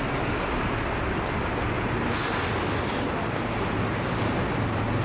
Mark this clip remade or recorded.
recorded